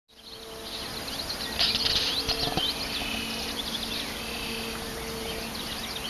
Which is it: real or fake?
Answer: real